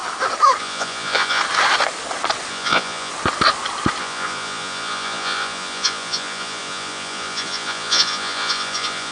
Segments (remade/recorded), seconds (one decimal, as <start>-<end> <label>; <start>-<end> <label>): 0.0-0.6 recorded; 0.6-1.4 remade; 1.4-2.5 recorded; 2.5-3.1 remade; 3.1-4.0 recorded; 4.0-9.1 remade